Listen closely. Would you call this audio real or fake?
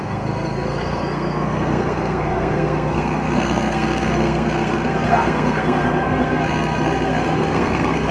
fake